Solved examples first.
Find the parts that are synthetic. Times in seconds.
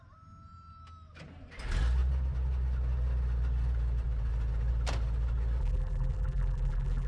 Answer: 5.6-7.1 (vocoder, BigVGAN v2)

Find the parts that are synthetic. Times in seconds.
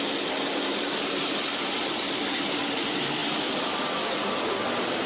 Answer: 3.2-5.1 (vocoder, BigVGAN v2)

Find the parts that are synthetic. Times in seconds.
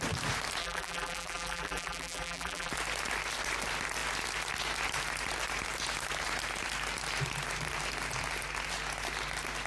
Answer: 0.6-2.7 (vocoder, BigVGAN v2)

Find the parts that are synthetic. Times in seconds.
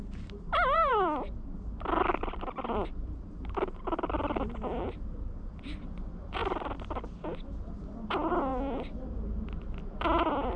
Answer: 0.0-0.9 (vocoder, BigVGAN v2); 2.0-6.4; 7.7-8.5; 9.8-10.6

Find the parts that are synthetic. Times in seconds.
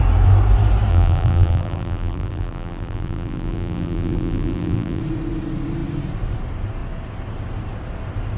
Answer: 0.9-5.0 (vocoder, BigVGAN v2)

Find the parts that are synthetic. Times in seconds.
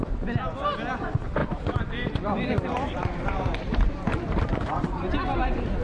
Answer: 1.4-4.5 (vocoder, BigVGAN v2)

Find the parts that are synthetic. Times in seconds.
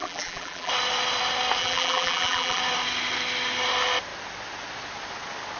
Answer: 0.0-0.7 (vocoder, BigVGAN v2); 1.6-2.6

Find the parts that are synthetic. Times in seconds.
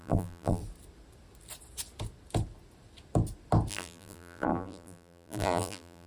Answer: 0.0-0.6 (vocoder, BigVGAN v2); 3.7-6.1